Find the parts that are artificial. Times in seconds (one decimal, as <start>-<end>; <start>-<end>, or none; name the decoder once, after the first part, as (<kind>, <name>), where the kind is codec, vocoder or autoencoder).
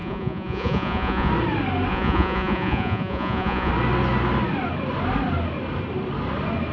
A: 0.0-1.3 (vocoder, Vocos); 1.9-3.7